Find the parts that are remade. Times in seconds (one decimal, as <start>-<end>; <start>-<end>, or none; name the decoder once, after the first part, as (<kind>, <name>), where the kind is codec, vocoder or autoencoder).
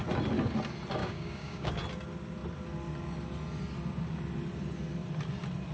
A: 1.0-1.7 (codec, DAC)